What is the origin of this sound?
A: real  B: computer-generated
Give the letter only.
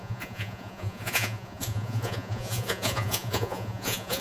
B